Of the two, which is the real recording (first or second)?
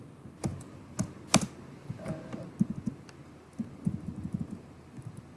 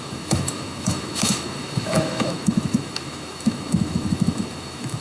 first